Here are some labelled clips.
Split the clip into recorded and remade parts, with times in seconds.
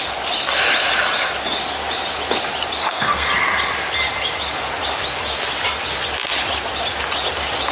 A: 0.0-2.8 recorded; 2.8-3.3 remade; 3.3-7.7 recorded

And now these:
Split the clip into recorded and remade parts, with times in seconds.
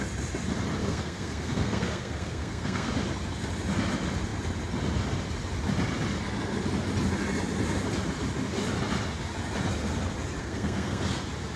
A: 0.0-0.8 recorded; 0.8-2.9 remade; 2.9-10.4 recorded; 10.4-11.0 remade; 11.0-11.6 recorded